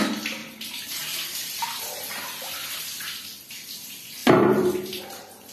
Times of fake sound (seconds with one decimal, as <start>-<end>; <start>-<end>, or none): 0.4-2.8; 4.2-5.0